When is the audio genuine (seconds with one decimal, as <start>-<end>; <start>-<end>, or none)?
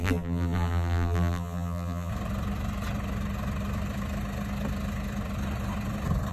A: 2.1-6.3